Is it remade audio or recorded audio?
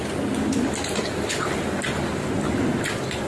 recorded